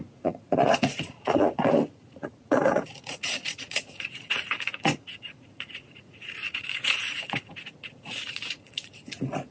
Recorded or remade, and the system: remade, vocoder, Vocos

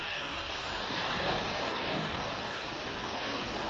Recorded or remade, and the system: remade, codec, DAC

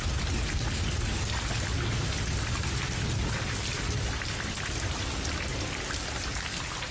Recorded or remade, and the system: recorded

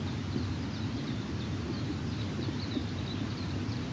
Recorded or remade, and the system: remade, vocoder, BigVGAN v2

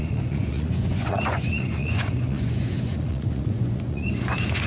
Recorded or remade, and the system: remade, vocoder, Vocos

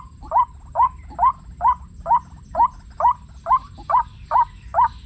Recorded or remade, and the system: recorded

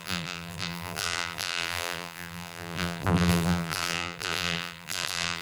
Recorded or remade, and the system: remade, vocoder, BigVGAN v2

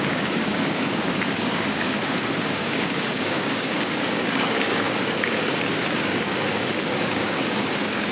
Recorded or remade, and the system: remade, codec, DAC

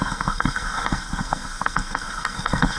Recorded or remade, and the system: remade, codec, SNAC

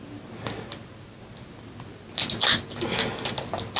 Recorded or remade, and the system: recorded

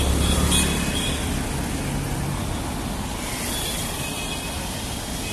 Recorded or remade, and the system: recorded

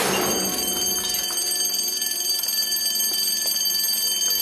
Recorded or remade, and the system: recorded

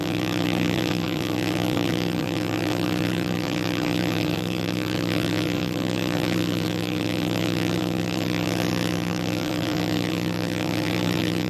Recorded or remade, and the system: remade, vocoder, BigVGAN v2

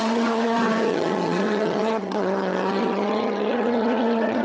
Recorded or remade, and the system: remade, vocoder, HiFi-GAN